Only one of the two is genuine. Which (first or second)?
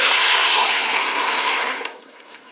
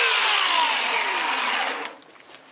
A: second